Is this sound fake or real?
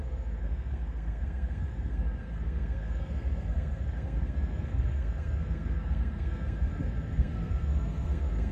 fake